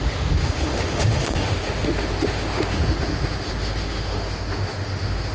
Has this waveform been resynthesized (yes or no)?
yes